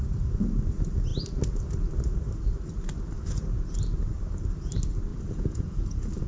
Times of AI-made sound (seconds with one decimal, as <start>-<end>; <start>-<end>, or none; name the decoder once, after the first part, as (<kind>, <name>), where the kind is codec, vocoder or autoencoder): 5.1-6.3 (vocoder, Vocos)